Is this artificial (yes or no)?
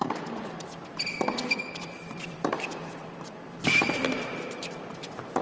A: yes